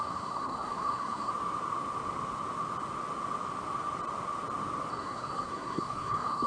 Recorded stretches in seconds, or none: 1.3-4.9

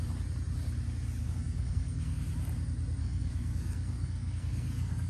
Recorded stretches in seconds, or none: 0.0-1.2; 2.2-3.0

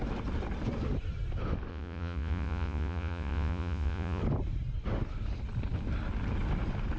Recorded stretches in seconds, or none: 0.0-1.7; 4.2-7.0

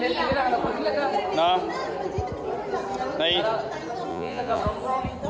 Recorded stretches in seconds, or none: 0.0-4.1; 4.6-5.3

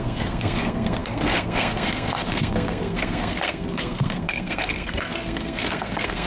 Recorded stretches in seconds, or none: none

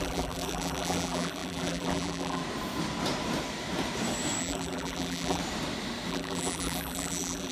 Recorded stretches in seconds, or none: 2.4-4.4; 5.4-6.1